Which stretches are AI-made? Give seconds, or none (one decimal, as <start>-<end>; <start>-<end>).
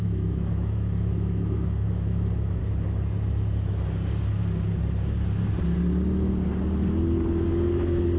0.0-2.6; 7.5-8.2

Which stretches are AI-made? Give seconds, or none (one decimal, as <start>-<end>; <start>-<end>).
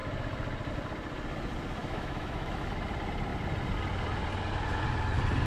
1.8-2.7